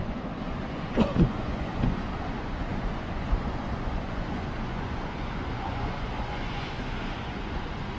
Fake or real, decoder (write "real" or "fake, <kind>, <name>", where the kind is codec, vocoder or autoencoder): fake, vocoder, Vocos